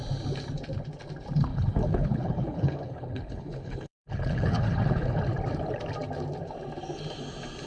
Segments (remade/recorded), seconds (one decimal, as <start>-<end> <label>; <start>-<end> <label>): 0.0-1.5 recorded; 1.5-5.2 remade; 5.2-7.7 recorded